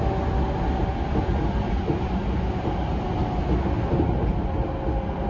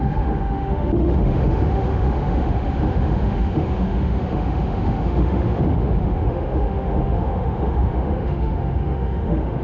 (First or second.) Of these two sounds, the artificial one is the second